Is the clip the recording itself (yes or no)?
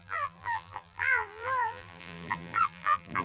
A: no